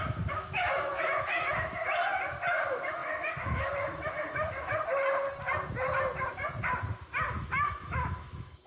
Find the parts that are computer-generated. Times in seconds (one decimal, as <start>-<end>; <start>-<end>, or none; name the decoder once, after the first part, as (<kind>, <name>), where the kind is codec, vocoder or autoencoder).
0.0-2.0 (autoencoder, DAC-VAE); 2.5-4.7; 7.3-8.7